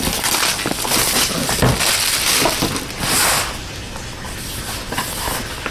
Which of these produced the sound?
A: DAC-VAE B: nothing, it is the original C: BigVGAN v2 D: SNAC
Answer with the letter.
B